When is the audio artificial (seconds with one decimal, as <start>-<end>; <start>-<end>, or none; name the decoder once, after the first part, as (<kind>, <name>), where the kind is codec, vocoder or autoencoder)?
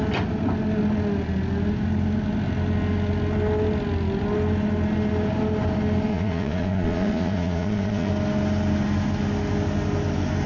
6.1-8.1 (vocoder, Vocos)